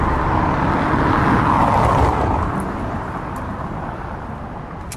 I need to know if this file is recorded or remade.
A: recorded